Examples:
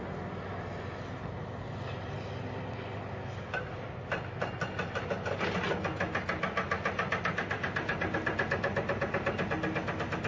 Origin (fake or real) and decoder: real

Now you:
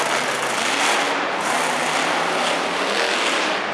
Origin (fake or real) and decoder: real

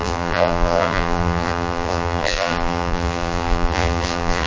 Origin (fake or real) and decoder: fake, vocoder, BigVGAN v2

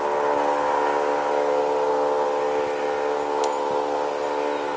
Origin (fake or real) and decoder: real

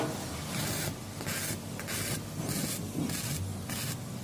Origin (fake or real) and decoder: real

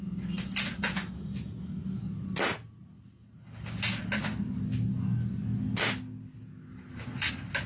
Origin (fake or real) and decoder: real